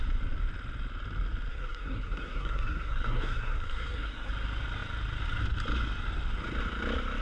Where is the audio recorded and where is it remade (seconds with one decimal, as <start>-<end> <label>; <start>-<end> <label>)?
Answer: 0.0-1.5 recorded; 1.5-4.3 remade; 4.3-7.2 recorded

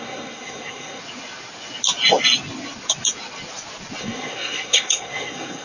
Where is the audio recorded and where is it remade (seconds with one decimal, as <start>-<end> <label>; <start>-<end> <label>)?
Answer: 0.0-1.0 remade; 1.0-4.0 recorded; 4.0-5.6 remade